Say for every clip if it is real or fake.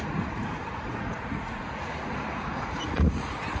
fake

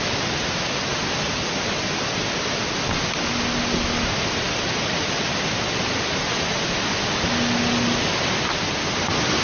real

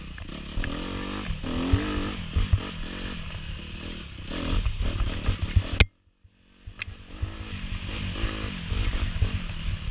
real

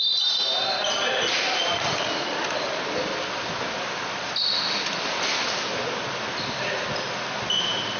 real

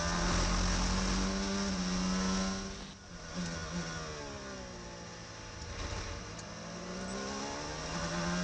real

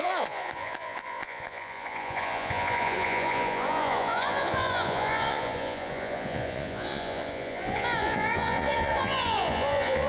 fake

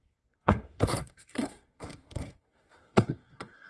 fake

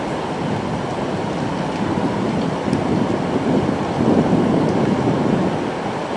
real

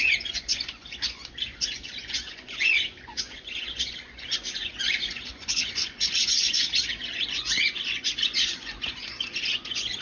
fake